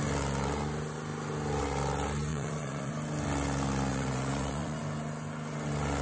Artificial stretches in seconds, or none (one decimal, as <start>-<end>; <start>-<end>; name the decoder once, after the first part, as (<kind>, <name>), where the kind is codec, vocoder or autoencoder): 2.3-2.9 (vocoder, Vocos); 3.9-4.8